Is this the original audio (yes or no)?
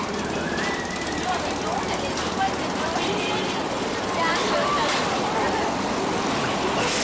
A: yes